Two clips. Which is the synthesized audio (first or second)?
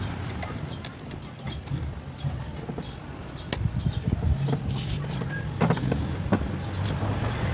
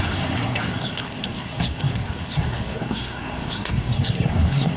second